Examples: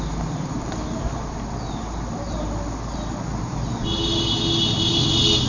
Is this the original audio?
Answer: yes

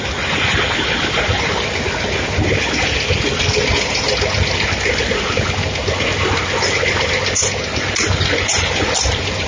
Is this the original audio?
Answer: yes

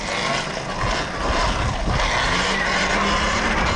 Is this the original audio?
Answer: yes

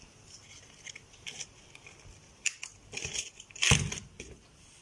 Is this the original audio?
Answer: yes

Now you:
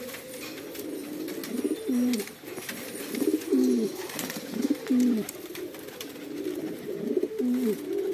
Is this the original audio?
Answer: yes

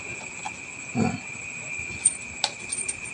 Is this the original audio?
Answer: yes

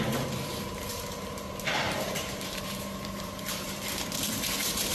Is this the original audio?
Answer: no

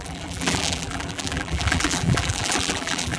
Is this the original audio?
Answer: no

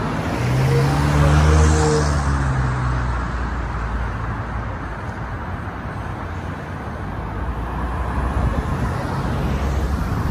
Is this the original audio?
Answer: yes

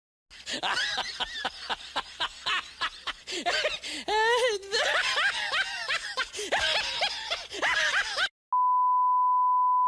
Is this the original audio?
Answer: yes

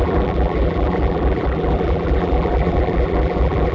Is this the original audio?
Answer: no